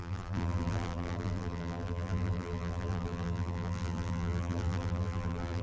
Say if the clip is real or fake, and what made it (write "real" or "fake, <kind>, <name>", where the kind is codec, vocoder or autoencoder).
fake, vocoder, BigVGAN v2